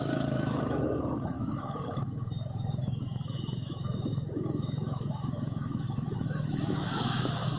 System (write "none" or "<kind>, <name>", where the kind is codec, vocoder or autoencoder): autoencoder, DAC-VAE